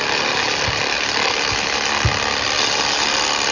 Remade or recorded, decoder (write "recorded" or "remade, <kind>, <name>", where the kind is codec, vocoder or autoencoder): recorded